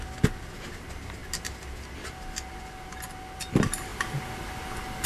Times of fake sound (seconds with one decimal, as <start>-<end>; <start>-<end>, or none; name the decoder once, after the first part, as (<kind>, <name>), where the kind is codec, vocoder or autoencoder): none